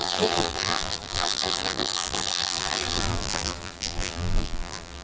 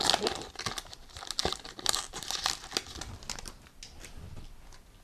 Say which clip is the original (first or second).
second